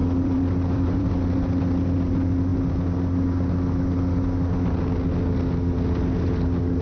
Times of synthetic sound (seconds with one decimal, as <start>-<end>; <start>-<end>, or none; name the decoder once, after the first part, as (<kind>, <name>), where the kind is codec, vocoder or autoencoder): 0.0-1.1 (vocoder, BigVGAN v2)